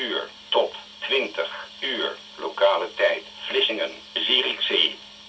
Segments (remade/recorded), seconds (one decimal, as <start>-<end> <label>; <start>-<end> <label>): 0.0-0.9 recorded; 0.9-3.7 remade; 3.7-5.3 recorded